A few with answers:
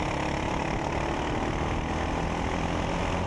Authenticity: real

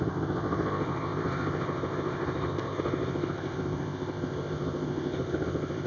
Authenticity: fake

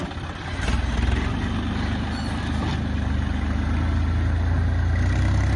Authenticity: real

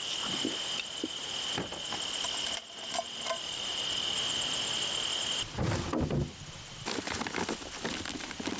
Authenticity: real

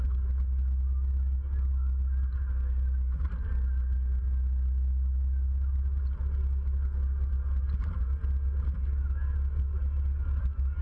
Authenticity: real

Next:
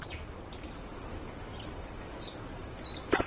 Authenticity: fake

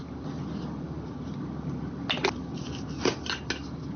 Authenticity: real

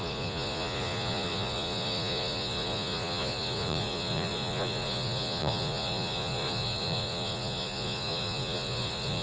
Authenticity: fake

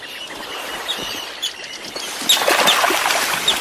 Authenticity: real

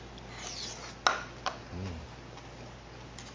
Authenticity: real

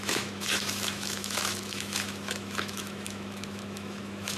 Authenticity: fake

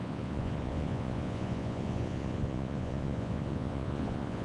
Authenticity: fake